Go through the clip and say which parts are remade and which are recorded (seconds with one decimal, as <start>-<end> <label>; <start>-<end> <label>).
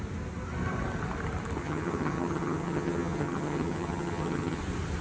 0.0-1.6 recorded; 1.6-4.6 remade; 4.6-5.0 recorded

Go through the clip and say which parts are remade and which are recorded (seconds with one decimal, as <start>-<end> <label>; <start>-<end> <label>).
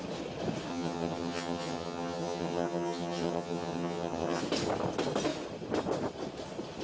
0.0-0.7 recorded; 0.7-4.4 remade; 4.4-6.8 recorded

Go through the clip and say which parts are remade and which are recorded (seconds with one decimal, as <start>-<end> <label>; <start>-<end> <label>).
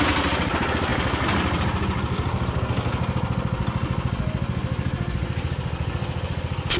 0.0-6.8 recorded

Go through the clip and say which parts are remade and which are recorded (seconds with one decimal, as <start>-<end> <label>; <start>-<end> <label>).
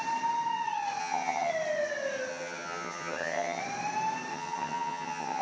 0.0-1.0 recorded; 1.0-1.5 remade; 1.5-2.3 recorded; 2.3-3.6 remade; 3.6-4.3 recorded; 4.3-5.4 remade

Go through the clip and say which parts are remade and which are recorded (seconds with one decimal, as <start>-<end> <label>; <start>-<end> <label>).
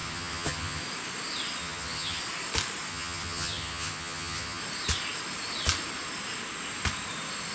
0.0-0.8 remade; 0.8-1.6 recorded; 1.6-2.2 remade; 2.2-2.9 recorded; 2.9-4.6 remade; 4.6-7.5 recorded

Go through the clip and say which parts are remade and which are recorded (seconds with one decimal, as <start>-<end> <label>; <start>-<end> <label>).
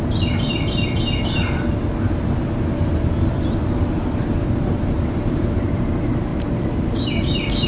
0.0-7.7 recorded